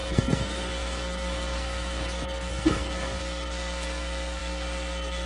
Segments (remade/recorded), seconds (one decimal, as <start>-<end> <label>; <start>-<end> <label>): 0.0-5.3 remade